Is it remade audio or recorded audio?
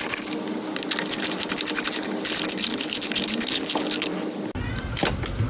recorded